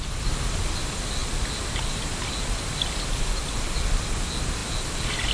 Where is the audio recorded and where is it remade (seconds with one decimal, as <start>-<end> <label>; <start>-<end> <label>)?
0.0-5.3 recorded